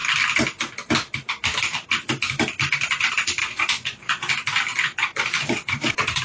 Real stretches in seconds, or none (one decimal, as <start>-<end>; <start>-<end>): 0.0-3.4; 4.3-4.7